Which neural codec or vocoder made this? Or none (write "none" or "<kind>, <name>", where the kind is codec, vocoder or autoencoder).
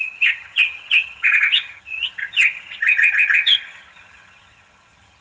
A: vocoder, HiFi-GAN